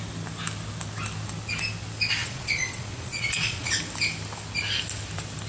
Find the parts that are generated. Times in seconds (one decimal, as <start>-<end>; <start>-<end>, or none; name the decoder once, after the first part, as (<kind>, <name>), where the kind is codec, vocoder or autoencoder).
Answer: 2.2-3.7 (vocoder, Vocos)